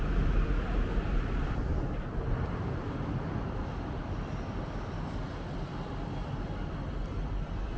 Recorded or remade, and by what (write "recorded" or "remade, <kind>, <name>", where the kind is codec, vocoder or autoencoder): recorded